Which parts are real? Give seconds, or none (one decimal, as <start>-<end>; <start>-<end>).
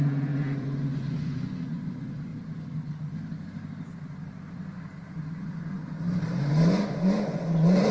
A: 2.3-5.3; 5.8-6.5